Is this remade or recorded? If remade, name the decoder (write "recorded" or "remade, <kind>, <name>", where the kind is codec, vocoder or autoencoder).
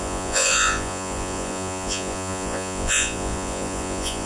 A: remade, vocoder, Vocos